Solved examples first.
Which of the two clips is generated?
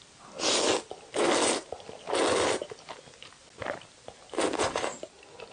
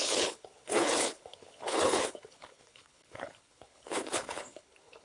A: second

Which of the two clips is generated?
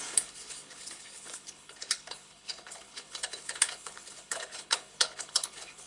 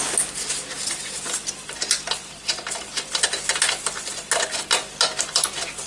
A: first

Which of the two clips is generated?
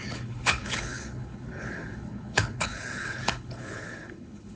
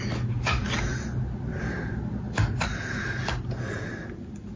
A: first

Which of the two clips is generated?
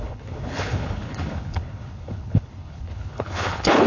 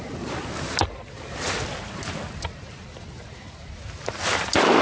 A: first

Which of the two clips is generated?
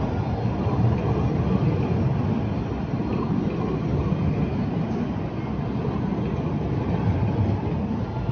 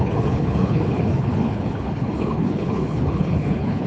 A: second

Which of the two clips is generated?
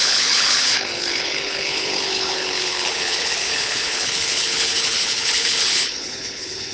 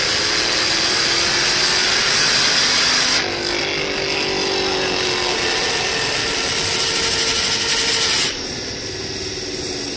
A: first